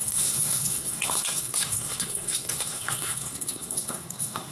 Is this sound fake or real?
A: fake